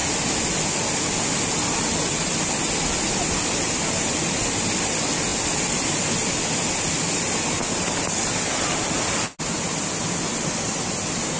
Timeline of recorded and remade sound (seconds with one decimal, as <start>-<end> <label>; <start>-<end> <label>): 0.0-11.4 recorded